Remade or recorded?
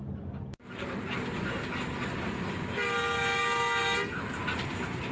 recorded